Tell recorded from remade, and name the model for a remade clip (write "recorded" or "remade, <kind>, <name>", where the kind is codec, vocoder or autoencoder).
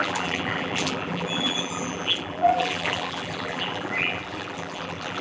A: remade, vocoder, BigVGAN v2